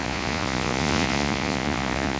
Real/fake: fake